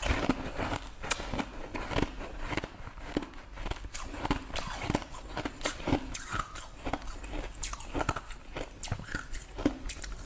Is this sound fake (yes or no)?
no